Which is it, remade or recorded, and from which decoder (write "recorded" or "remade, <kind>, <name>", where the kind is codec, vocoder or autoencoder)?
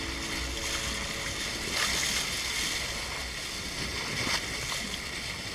recorded